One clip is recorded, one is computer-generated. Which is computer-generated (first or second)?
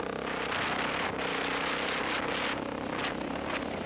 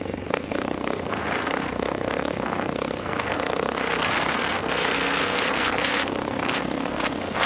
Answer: second